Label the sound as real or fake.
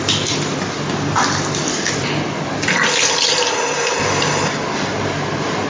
real